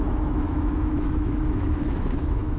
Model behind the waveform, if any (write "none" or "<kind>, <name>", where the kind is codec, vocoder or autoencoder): autoencoder, DAC-VAE